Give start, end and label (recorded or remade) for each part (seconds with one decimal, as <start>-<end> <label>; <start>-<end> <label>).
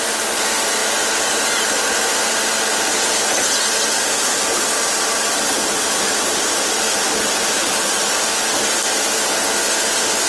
0.0-10.3 recorded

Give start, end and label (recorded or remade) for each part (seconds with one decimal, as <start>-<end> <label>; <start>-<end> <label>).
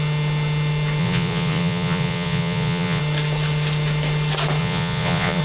0.0-1.0 recorded; 1.0-3.0 remade; 3.0-4.6 recorded; 4.6-5.4 remade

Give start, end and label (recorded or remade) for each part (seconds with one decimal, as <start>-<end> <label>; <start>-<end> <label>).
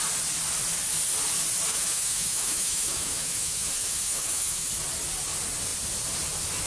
0.0-1.7 recorded; 1.7-4.7 remade; 4.7-6.7 recorded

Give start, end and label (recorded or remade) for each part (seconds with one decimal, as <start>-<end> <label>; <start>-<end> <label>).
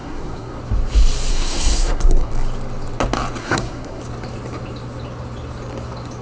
0.0-0.6 remade; 0.6-1.3 recorded; 1.3-2.3 remade; 2.3-3.4 recorded; 3.4-4.0 remade; 4.0-6.2 recorded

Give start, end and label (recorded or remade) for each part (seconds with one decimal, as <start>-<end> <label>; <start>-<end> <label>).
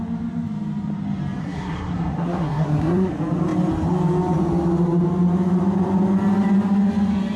0.0-1.4 recorded; 1.4-3.1 remade; 3.1-7.4 recorded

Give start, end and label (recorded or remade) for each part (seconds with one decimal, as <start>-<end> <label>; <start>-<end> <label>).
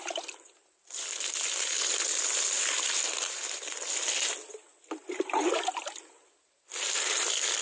0.0-7.6 recorded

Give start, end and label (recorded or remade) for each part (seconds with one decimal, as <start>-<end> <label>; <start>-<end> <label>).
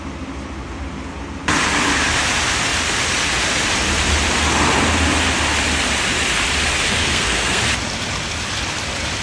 0.0-7.0 recorded; 7.0-7.6 remade; 7.6-9.2 recorded